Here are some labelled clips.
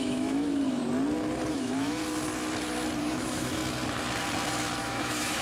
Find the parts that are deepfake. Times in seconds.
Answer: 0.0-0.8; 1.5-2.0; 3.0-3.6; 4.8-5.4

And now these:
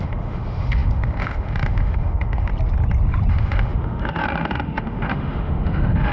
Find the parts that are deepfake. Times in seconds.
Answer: 0.0-2.5; 3.3-6.1

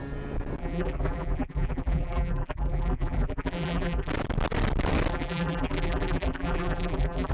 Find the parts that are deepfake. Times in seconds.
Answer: 0.6-4.1; 5.1-7.3